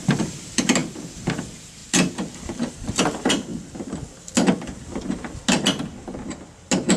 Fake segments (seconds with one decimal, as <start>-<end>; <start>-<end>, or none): 0.0-3.5